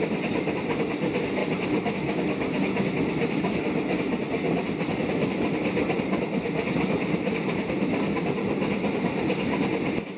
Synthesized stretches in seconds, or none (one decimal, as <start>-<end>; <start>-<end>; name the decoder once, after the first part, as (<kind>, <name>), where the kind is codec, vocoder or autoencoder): none